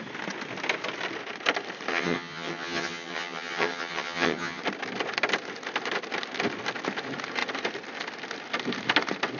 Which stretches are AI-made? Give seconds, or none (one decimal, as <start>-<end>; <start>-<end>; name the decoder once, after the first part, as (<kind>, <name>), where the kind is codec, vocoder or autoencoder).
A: 1.9-4.6 (vocoder, HiFi-GAN)